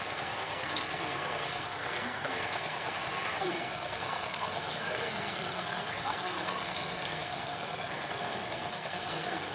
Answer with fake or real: fake